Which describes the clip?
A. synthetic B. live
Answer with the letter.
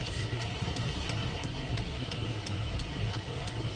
A